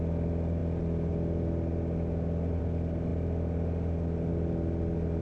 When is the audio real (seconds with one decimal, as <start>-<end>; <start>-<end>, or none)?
0.0-5.2